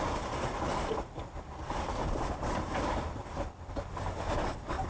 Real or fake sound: real